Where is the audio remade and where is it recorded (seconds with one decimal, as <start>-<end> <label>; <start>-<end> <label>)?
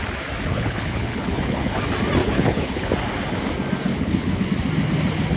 0.0-0.5 recorded; 0.5-1.8 remade; 1.8-2.2 recorded; 2.2-2.9 remade; 2.9-3.9 recorded; 3.9-4.5 remade; 4.5-5.4 recorded